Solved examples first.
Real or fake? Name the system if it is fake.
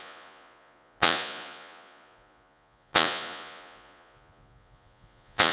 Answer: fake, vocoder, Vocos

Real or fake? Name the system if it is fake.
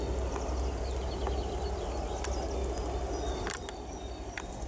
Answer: real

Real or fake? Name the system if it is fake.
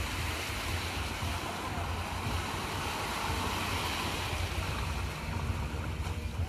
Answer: real